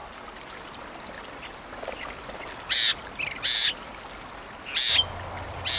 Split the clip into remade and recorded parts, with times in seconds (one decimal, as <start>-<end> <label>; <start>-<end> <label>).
0.0-5.8 recorded